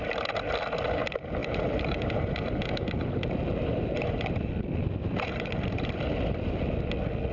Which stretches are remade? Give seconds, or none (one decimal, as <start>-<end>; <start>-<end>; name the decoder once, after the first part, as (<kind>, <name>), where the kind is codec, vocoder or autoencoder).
1.4-5.8 (vocoder, BigVGAN v2)

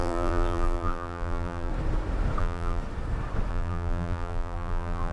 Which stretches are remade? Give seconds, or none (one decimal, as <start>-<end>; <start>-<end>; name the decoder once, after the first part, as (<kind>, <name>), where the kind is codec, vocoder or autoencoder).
0.0-1.7 (vocoder, BigVGAN v2); 2.4-2.8; 3.5-5.1

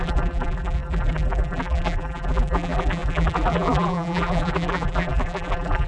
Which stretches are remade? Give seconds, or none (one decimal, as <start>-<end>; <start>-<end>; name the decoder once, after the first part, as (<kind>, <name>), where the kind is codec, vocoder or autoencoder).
0.0-5.9 (vocoder, BigVGAN v2)

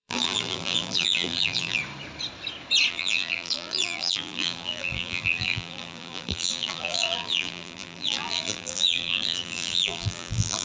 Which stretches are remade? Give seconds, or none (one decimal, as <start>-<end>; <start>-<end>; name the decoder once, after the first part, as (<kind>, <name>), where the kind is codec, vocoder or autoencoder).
0.0-1.8 (vocoder, BigVGAN v2); 2.9-10.6

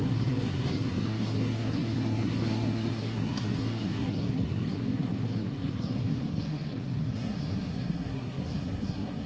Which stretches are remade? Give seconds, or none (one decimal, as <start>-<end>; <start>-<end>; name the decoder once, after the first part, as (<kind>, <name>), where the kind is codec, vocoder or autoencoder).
0.0-9.3 (codec, SNAC)

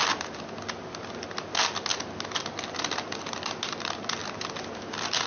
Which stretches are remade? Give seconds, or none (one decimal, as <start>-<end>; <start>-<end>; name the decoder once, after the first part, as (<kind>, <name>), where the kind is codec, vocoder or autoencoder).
none

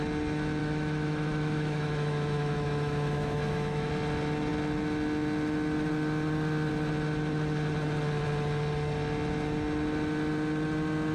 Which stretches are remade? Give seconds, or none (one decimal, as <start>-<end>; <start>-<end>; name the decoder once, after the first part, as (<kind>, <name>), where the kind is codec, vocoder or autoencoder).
0.6-3.9 (autoencoder, DAC-VAE)

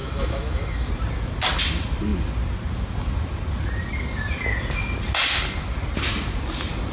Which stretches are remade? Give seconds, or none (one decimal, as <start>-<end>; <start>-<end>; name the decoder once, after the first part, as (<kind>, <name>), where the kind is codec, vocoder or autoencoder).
0.0-0.9 (autoencoder, DAC-VAE)